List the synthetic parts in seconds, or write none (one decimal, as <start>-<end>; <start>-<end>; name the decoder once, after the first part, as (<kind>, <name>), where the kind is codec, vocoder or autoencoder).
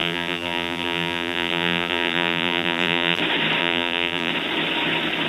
0.0-3.2 (vocoder, BigVGAN v2); 3.6-4.3